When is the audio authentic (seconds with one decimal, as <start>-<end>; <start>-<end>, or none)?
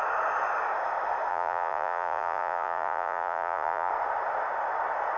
0.0-1.3; 3.9-5.2